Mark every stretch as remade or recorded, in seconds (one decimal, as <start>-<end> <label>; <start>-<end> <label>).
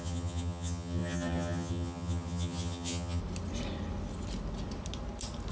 0.0-3.2 remade; 3.2-5.5 recorded